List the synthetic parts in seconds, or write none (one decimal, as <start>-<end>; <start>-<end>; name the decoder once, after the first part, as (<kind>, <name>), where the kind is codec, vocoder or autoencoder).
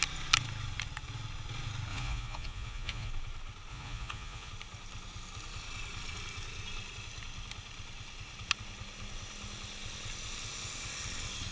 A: 1.9-3.1 (vocoder, Vocos); 3.7-4.5